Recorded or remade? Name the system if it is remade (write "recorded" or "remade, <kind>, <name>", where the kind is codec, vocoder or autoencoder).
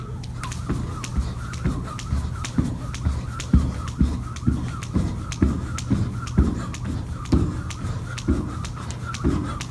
recorded